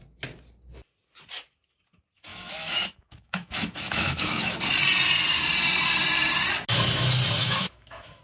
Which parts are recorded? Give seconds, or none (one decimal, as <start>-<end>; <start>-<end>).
0.0-2.3; 4.6-7.4